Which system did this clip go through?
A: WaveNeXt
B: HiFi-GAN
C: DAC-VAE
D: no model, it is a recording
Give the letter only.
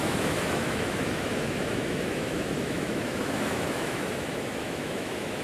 C